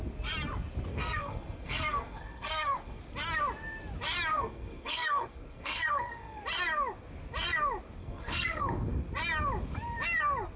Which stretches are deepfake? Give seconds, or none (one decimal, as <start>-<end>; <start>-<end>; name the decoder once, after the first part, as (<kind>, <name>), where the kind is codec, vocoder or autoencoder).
0.9-3.0 (codec, SNAC); 4.3-6.4; 8.0-9.0